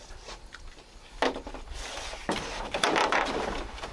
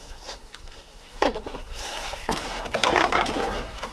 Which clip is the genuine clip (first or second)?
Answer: first